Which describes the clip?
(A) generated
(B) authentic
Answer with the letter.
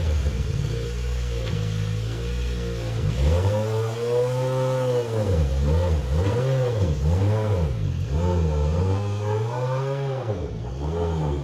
A